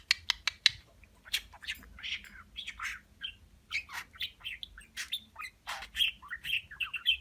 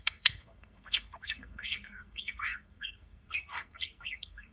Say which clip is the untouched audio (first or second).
first